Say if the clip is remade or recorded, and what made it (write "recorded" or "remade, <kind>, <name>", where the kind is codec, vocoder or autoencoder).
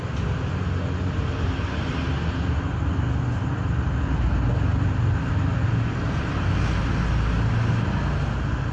recorded